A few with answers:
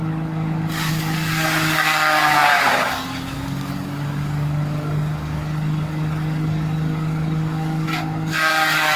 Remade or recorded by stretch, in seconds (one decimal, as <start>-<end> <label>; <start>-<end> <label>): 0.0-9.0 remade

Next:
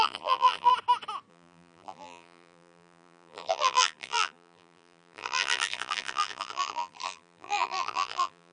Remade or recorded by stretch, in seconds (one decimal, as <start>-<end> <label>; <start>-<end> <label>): 0.0-0.7 remade; 0.7-1.3 recorded; 1.3-8.5 remade

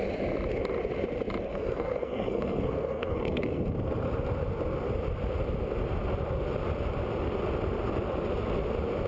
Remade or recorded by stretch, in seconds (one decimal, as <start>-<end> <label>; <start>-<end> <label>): 0.0-1.5 recorded; 1.5-3.6 remade; 3.6-9.1 recorded

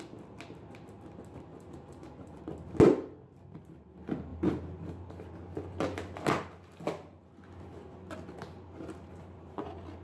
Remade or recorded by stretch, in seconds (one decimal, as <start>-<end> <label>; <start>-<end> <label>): 0.0-1.5 recorded; 1.5-2.4 remade; 2.4-10.0 recorded